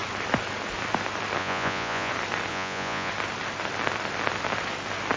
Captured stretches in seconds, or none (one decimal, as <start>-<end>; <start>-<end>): 0.0-1.4; 2.1-2.5; 3.1-5.2